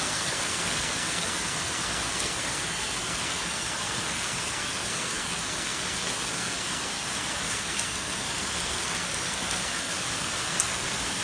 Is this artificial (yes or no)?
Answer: yes